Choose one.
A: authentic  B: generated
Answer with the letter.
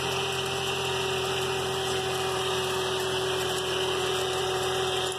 A